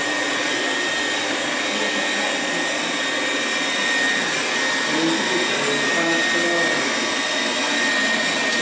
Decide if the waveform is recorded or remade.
recorded